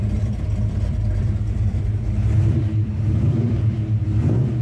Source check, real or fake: fake